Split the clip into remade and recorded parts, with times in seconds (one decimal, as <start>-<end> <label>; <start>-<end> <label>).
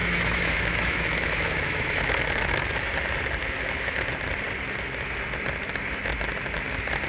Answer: 0.0-2.9 remade; 2.9-3.4 recorded; 3.4-4.1 remade; 4.1-7.1 recorded